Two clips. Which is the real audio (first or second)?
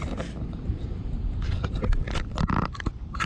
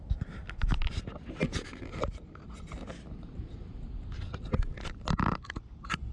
second